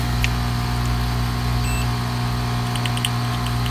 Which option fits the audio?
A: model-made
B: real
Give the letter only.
B